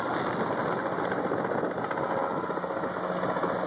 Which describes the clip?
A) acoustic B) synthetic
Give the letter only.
A